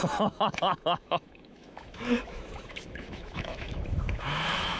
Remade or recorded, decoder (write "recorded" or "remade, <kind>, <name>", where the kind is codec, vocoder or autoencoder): remade, autoencoder, DAC-VAE